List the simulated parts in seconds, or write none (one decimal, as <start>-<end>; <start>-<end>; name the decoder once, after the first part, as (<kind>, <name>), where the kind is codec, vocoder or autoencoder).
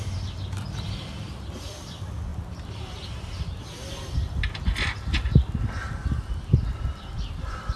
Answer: 0.0-2.3 (vocoder, BigVGAN v2); 7.0-7.8